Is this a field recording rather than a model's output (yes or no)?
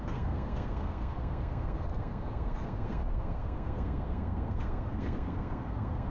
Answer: no